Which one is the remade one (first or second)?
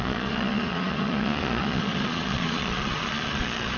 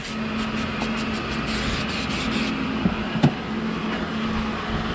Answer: first